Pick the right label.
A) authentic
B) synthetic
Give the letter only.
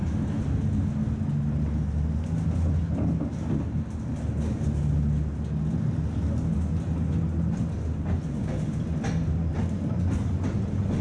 A